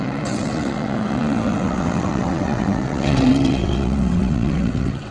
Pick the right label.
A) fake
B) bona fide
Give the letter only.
A